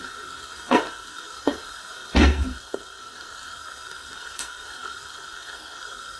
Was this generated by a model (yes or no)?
yes